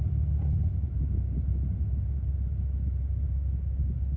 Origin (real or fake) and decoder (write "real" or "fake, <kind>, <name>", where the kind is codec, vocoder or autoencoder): real